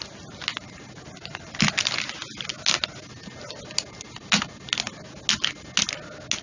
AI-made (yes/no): no